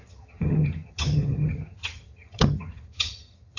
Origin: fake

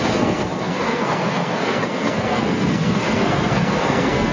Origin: fake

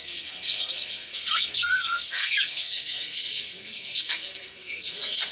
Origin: fake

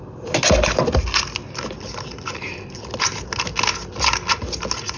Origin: real